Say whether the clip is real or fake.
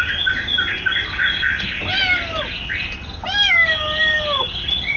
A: real